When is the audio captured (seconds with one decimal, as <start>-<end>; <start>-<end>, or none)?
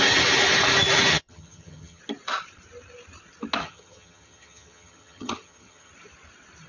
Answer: 0.0-1.1; 2.0-3.6; 5.9-6.7